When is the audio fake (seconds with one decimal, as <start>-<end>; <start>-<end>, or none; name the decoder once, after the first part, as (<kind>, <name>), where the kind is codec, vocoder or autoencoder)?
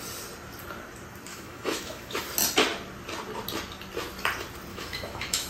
1.3-2.2 (autoencoder, DAC-VAE); 4.7-5.5